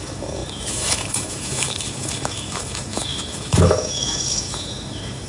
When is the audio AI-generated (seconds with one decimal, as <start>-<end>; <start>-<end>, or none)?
0.0-5.3